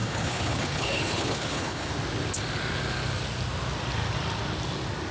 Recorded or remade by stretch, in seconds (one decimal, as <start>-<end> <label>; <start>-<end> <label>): 0.0-1.9 remade; 1.9-5.1 recorded